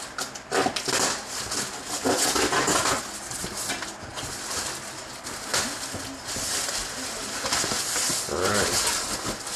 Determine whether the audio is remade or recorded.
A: recorded